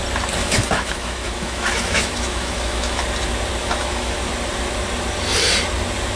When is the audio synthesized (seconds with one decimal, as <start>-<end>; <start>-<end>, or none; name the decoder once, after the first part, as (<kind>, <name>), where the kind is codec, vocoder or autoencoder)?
0.4-3.0 (autoencoder, DAC-VAE); 3.6-4.3